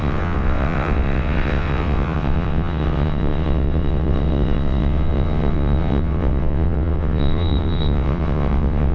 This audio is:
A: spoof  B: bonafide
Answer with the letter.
A